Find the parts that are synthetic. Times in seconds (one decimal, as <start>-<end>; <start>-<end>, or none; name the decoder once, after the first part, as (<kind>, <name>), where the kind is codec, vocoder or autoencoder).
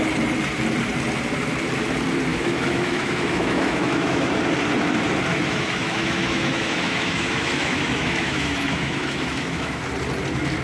2.3-4.3 (autoencoder, DAC-VAE); 5.3-9.8